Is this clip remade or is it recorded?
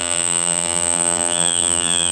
remade